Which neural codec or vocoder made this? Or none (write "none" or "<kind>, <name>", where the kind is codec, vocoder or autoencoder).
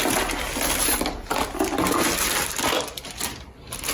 none